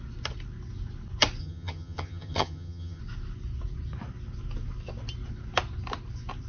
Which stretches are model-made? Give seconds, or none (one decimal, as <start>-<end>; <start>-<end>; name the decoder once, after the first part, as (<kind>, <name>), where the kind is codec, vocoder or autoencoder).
1.4-3.0 (vocoder, HiFi-GAN)